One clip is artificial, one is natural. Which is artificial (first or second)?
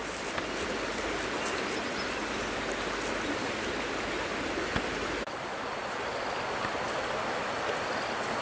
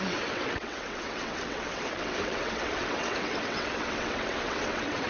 second